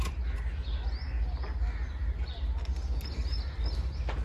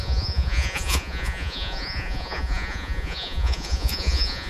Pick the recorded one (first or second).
first